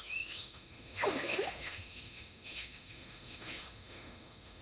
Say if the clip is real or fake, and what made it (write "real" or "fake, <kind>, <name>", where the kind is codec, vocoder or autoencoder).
fake, autoencoder, DAC-VAE